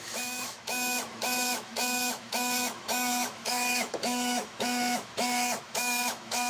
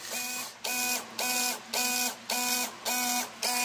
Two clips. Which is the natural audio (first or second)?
second